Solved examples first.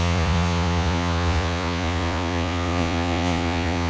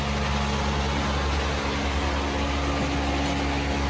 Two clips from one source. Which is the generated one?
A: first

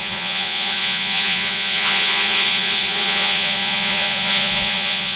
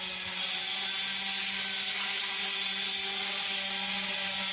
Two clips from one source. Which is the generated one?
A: first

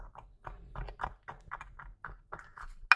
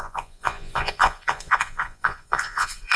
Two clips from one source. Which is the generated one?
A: second